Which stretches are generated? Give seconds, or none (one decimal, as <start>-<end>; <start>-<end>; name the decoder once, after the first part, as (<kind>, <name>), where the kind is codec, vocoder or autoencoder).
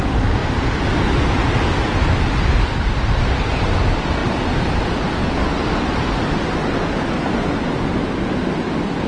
none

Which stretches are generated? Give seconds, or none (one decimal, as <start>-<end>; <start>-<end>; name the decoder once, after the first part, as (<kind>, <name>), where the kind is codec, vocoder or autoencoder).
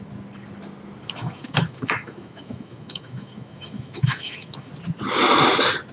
1.2-4.7 (autoencoder, DAC-VAE)